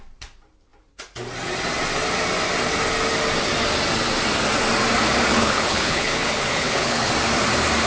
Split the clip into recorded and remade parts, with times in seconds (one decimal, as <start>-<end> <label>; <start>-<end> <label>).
0.0-5.3 recorded; 5.3-7.1 remade; 7.1-7.9 recorded

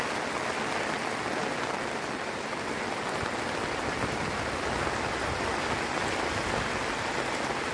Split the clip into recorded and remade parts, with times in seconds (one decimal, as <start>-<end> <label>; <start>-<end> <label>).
0.0-7.7 recorded

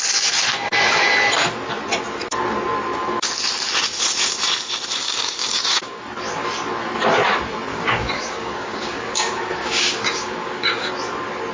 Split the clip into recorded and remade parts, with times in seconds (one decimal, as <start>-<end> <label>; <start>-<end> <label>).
0.0-5.0 recorded; 5.0-6.0 remade; 6.0-7.7 recorded; 7.7-10.9 remade; 10.9-11.5 recorded

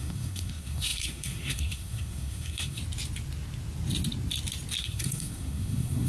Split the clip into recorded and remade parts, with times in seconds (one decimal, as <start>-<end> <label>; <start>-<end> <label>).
0.0-2.8 remade; 2.8-4.8 recorded; 4.8-6.1 remade

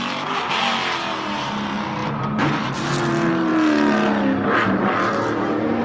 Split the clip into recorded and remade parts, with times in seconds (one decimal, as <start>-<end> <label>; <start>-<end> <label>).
0.0-5.8 recorded

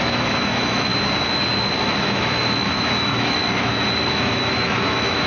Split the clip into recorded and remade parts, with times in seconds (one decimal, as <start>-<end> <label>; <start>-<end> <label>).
0.0-0.9 remade; 0.9-2.0 recorded; 2.0-3.4 remade; 3.4-4.1 recorded; 4.1-5.3 remade

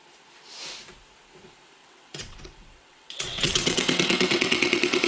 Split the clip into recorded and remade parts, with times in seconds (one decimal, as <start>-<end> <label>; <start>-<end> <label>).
0.0-1.8 recorded; 1.8-5.1 remade

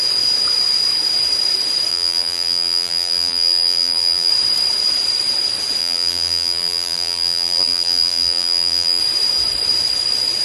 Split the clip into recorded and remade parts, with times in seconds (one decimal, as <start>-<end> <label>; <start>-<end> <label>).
0.0-1.9 recorded; 1.9-4.3 remade; 4.3-5.8 recorded; 5.8-9.0 remade; 9.0-10.4 recorded